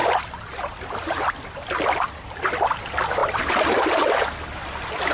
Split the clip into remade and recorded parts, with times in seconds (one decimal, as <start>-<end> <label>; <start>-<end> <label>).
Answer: 0.0-3.2 recorded; 3.2-5.1 remade